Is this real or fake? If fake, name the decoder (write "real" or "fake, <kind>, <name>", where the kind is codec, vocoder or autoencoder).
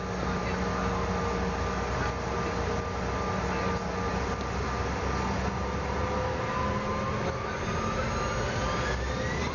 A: real